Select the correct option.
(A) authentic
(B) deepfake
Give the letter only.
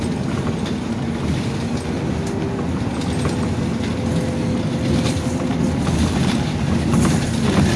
A